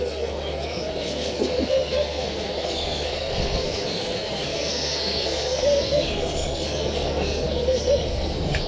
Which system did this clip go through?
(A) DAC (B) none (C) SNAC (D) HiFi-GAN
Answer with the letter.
C